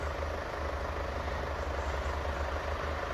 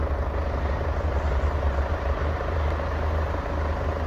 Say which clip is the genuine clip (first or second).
first